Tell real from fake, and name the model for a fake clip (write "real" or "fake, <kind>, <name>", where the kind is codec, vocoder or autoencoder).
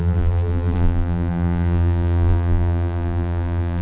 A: fake, vocoder, BigVGAN v2